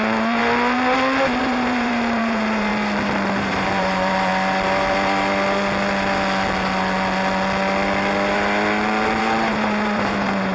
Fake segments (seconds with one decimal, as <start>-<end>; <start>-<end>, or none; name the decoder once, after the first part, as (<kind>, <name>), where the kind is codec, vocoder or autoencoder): 0.0-0.4 (vocoder, BigVGAN v2); 1.4-2.7; 3.4-4.3; 9.2-10.5